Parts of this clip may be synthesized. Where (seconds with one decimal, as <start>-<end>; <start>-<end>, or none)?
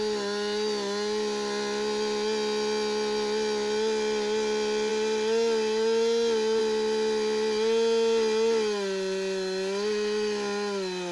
none